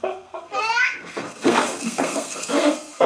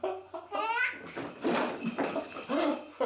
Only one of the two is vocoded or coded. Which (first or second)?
first